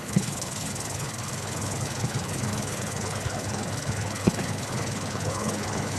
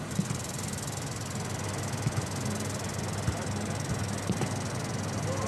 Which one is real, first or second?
second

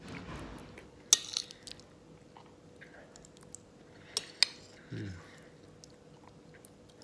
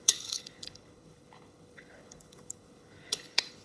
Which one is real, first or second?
first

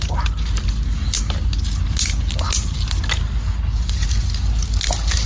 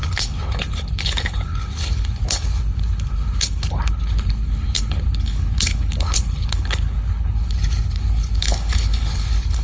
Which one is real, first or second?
first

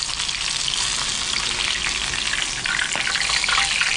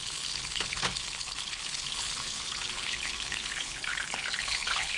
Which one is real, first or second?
first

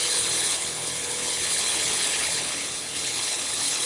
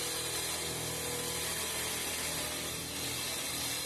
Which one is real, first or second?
second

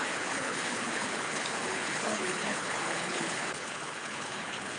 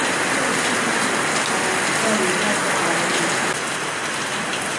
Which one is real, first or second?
second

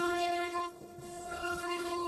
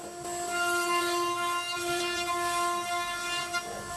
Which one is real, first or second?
second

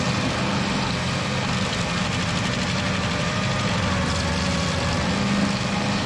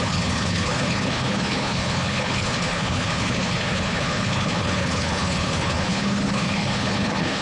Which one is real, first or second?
first